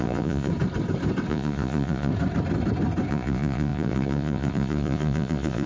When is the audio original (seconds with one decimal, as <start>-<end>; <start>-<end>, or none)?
0.5-1.3; 2.1-3.1